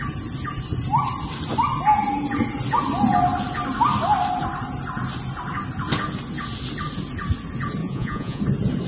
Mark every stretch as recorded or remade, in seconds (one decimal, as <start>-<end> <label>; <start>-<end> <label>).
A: 0.0-7.8 recorded; 7.8-8.4 remade; 8.4-8.9 recorded